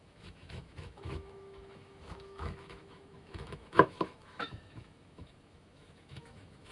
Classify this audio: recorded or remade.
remade